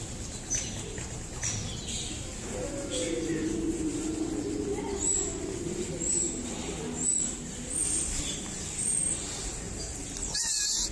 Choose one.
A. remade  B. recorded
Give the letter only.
B